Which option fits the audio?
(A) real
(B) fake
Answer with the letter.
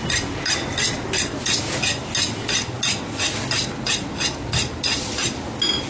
A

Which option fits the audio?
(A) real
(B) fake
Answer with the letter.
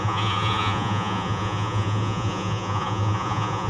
B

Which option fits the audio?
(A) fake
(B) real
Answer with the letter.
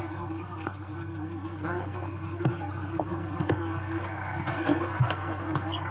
A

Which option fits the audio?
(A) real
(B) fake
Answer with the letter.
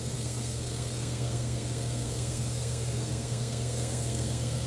B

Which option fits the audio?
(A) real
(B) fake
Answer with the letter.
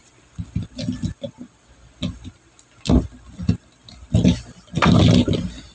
A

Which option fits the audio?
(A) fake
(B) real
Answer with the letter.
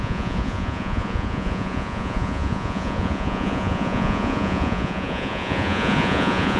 A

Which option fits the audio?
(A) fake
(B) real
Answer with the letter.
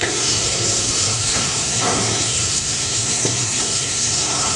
A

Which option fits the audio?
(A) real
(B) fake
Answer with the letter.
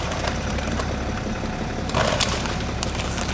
B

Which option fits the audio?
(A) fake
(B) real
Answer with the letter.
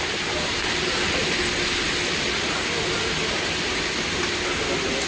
B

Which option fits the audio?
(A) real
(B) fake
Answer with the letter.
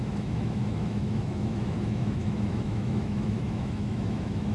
B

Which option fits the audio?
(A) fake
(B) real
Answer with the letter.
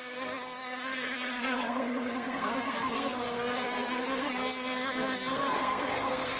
A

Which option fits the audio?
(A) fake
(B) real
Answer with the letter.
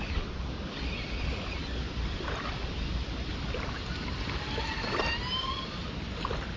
B